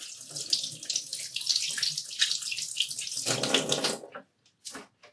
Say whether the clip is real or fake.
real